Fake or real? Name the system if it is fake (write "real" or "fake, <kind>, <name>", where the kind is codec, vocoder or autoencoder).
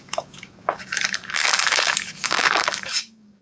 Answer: fake, codec, DAC